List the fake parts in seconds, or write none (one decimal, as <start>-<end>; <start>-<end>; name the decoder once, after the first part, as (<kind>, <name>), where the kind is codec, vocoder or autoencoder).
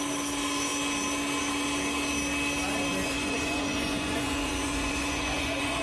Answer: 2.9-5.8 (vocoder, Vocos)